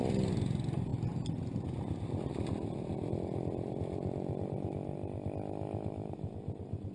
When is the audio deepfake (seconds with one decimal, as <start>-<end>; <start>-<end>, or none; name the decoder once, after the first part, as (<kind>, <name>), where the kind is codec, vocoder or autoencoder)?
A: none